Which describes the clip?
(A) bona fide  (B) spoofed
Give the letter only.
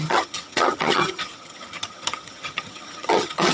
B